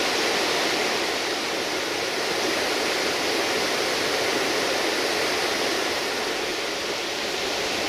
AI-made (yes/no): no